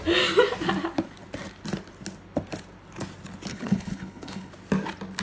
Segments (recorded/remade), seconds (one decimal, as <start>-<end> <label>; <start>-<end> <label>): 0.0-3.5 recorded; 3.5-4.5 remade; 4.5-5.2 recorded